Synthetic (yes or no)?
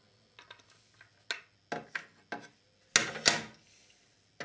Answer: no